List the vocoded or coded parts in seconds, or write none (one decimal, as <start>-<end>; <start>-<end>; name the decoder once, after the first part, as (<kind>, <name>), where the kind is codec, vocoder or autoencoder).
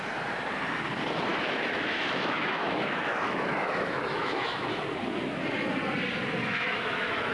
1.3-4.8 (autoencoder, DAC-VAE); 6.4-7.3